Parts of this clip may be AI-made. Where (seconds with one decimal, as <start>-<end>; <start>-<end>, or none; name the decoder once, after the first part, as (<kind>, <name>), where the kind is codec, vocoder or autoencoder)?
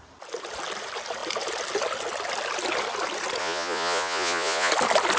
3.4-4.7 (vocoder, Vocos)